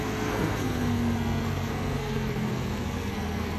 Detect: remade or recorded remade